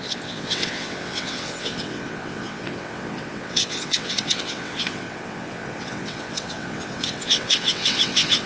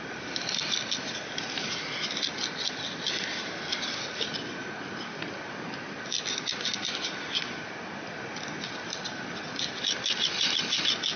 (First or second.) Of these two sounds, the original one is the second